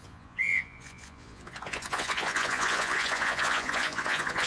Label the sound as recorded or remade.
remade